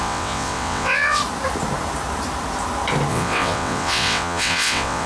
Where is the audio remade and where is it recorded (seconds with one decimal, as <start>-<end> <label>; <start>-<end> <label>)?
0.0-1.2 remade; 1.2-3.1 recorded; 3.1-5.1 remade